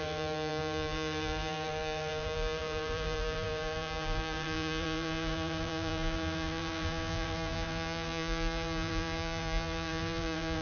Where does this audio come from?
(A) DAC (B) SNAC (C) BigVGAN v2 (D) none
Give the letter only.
C